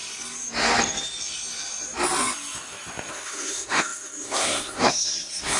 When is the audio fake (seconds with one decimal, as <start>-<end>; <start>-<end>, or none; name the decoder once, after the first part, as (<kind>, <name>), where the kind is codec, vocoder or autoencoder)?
3.1-5.6 (codec, SNAC)